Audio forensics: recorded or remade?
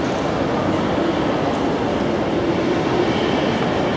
recorded